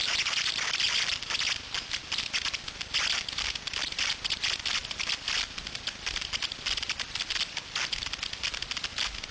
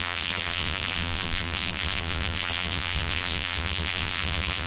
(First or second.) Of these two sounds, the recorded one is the first